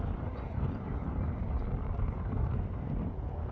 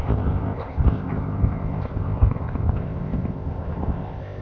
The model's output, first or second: second